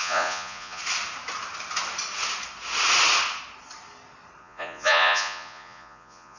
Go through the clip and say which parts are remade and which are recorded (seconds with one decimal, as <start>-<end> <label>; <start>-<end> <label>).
0.0-0.8 remade; 0.8-4.4 recorded; 4.4-6.4 remade

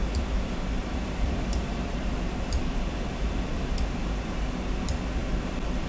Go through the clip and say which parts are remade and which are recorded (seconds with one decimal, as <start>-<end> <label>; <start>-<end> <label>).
0.0-3.4 remade; 3.4-5.2 recorded; 5.2-5.9 remade

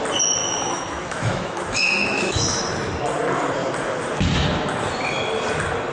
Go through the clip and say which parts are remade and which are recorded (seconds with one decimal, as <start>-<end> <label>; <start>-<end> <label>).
0.0-0.4 recorded; 0.4-2.6 remade; 2.6-5.9 recorded

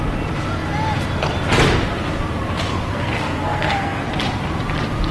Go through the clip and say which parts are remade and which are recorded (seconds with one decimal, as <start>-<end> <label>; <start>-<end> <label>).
0.0-2.7 recorded; 2.7-4.1 remade; 4.1-5.1 recorded